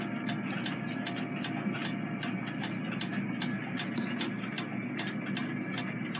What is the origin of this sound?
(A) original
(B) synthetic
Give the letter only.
A